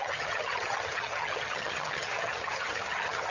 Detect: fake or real fake